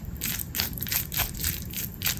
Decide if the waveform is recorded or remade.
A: remade